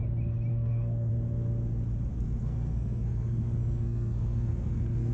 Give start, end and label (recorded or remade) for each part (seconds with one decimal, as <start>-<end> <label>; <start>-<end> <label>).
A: 0.0-0.5 recorded; 0.5-1.1 remade; 1.1-2.1 recorded; 2.1-5.1 remade